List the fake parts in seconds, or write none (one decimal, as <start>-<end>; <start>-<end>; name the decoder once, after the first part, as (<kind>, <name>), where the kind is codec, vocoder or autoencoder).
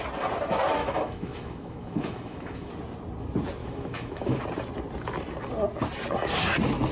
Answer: 0.8-2.7 (autoencoder, DAC-VAE); 3.6-4.4